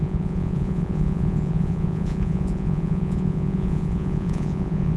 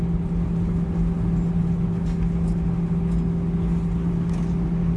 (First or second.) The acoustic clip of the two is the second